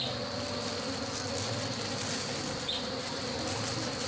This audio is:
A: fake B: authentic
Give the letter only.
B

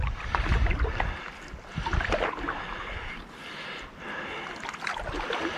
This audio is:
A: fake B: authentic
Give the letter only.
B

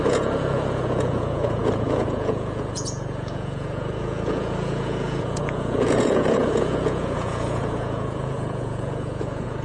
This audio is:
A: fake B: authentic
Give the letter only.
A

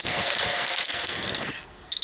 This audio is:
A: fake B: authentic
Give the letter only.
A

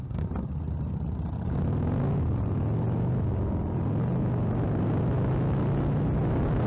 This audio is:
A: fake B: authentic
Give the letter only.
B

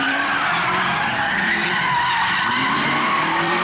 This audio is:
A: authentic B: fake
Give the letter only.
B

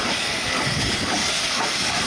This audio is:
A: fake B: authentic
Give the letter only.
A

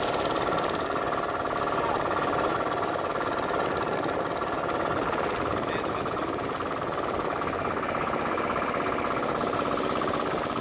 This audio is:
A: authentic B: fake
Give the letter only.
A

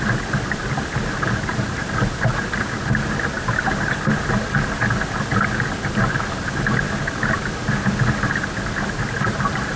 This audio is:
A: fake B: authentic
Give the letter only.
B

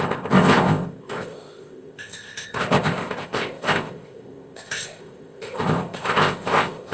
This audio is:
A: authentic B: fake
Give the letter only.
B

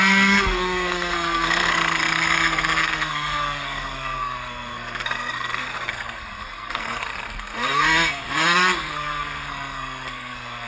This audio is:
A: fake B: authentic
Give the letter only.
A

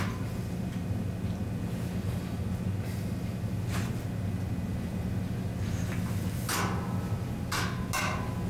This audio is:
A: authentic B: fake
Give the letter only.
A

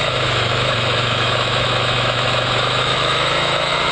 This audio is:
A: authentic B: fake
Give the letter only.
B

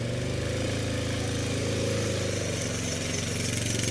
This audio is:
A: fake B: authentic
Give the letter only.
B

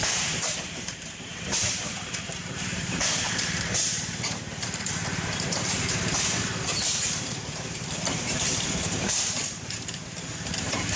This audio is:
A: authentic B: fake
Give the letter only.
B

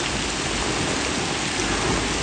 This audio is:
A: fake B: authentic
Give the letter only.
B